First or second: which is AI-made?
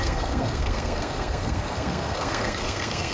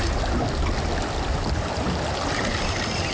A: first